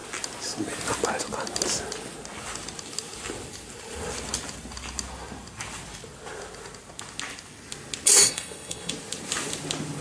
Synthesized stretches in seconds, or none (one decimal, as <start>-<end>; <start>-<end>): 8.2-8.9